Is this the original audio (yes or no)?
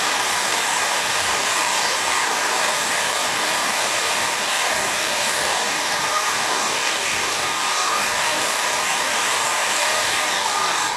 no